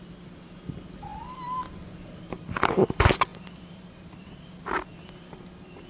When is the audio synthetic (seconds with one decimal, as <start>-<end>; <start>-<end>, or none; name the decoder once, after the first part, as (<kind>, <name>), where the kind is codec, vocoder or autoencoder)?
0.0-5.9 (vocoder, BigVGAN v2)